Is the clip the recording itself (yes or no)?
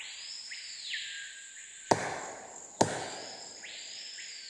yes